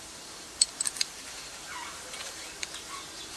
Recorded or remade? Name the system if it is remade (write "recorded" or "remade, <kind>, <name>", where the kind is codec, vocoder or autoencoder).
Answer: remade, vocoder, BigVGAN v2